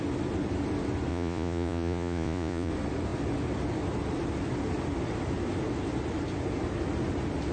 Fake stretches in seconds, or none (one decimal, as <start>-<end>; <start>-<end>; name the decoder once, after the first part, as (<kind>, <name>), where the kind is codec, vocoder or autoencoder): 1.1-2.7 (vocoder, Vocos)